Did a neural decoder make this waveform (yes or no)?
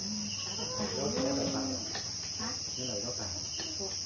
no